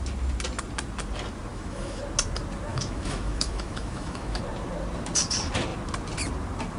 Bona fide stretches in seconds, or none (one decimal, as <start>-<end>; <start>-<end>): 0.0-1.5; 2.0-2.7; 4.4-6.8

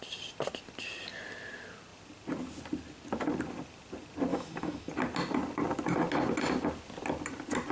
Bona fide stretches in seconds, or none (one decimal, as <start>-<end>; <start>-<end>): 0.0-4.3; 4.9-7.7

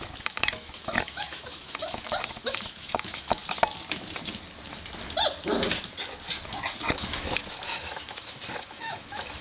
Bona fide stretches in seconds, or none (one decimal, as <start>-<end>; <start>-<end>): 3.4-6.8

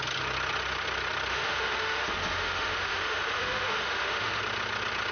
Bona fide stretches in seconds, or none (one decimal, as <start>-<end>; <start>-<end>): 0.0-1.3; 4.4-5.1

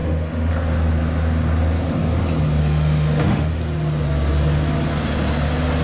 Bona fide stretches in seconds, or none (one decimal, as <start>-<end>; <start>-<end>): 0.5-2.6; 3.6-5.8